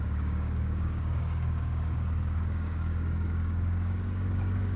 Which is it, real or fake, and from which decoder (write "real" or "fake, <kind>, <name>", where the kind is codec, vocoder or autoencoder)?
fake, codec, DAC